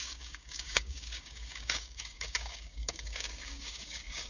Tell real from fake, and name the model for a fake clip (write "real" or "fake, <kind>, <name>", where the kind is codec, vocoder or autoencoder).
fake, codec, DAC